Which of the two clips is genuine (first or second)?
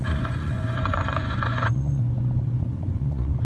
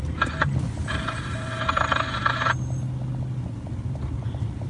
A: second